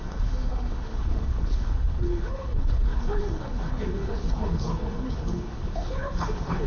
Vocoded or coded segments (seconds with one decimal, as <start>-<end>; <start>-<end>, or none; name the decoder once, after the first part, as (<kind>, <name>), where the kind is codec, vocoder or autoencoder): 0.0-6.7 (codec, HILCodec)